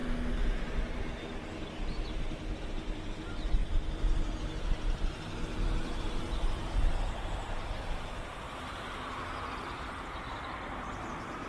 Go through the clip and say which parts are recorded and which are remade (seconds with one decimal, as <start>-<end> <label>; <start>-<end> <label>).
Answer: 0.0-2.6 recorded; 2.6-11.5 remade